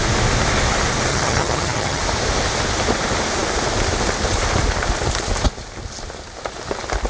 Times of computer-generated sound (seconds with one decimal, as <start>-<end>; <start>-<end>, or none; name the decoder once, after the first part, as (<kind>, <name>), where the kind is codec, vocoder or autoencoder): 1.1-2.0 (vocoder, HiFi-GAN)